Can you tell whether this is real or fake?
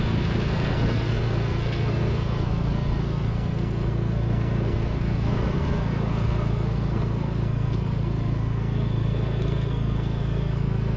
fake